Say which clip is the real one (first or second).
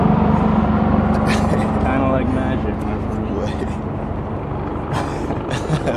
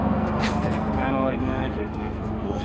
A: first